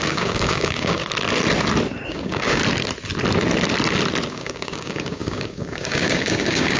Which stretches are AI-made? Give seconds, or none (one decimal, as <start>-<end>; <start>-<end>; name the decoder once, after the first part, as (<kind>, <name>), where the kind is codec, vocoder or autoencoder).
0.0-1.0 (codec, DAC); 2.1-2.6; 4.3-6.8